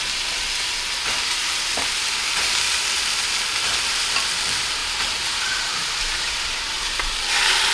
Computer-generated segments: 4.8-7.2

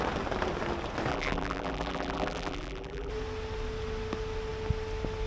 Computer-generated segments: 1.1-3.1

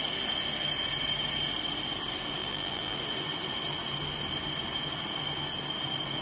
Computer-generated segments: 2.4-3.0